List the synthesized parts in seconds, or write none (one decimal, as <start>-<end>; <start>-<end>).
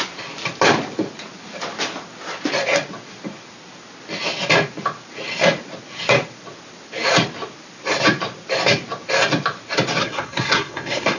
10.0-11.2